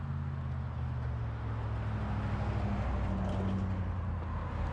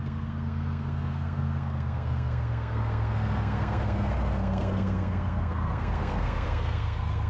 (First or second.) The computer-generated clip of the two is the second